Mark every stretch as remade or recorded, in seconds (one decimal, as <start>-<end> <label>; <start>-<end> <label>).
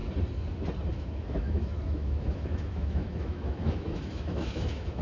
0.0-0.9 recorded; 0.9-5.0 remade